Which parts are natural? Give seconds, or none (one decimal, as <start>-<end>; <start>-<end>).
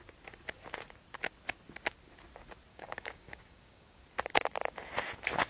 0.0-2.7; 4.0-5.5